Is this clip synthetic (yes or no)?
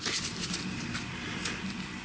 no